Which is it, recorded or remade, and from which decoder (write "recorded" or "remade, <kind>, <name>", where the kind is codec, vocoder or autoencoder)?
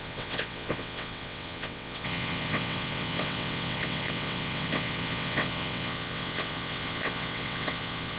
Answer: remade, vocoder, WaveNeXt